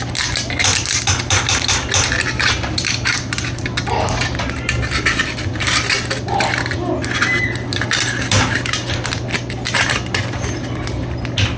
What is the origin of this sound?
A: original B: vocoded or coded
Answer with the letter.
A